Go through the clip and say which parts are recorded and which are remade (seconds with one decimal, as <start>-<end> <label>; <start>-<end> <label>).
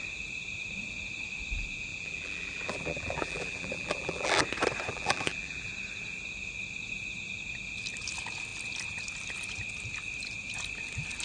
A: 0.0-1.9 recorded; 1.9-4.4 remade; 4.4-4.9 recorded; 4.9-5.7 remade; 5.7-11.2 recorded